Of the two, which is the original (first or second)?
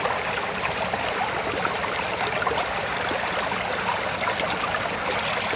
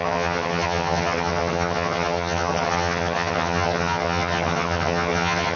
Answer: first